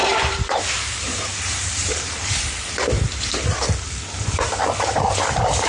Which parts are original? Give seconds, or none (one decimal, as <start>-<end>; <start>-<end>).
2.4-5.7